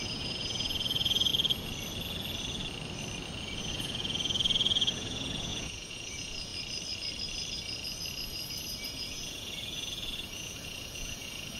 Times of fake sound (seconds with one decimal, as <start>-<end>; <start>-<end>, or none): 0.0-1.3; 3.6-6.5; 8.9-11.6